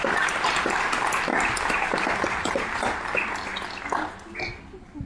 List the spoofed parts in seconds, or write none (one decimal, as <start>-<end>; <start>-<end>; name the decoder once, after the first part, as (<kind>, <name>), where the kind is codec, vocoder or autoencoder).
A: none

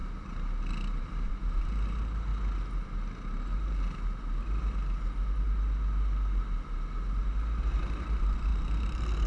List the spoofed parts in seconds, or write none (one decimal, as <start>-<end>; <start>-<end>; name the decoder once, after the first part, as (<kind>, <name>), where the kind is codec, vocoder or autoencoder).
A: 1.0-2.3 (vocoder, BigVGAN v2); 7.6-9.3

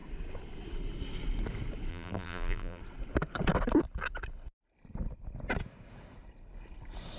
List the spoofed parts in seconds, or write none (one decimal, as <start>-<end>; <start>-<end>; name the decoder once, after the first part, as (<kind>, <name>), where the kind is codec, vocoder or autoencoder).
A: 1.9-2.8 (vocoder, BigVGAN v2)

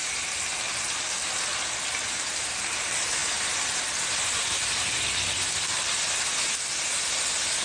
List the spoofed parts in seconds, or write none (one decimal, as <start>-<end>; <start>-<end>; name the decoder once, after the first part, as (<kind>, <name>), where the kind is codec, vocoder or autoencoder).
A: none

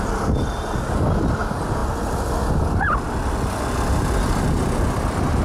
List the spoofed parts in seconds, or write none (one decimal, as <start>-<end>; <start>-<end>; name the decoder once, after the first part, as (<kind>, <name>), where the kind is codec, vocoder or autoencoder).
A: none